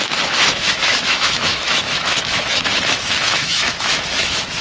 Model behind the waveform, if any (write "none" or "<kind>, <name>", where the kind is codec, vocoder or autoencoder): autoencoder, DAC-VAE